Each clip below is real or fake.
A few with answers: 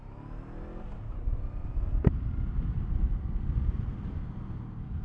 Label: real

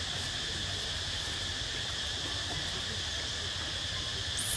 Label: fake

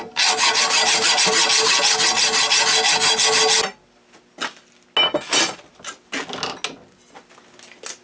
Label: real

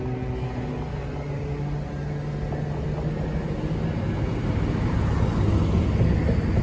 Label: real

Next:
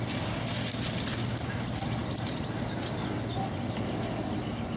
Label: real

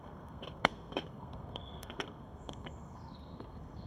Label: fake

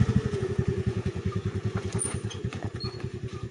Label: fake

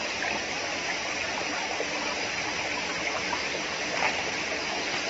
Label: real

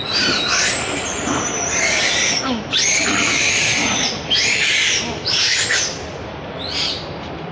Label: fake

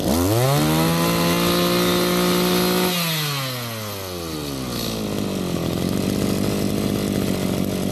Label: real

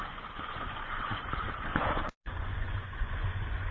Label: fake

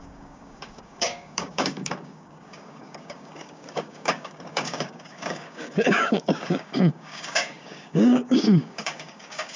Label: fake